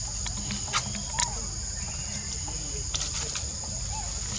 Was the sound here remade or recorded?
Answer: recorded